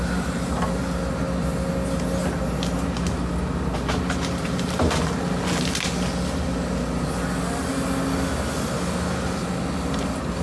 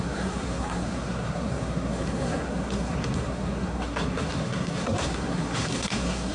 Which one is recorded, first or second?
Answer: first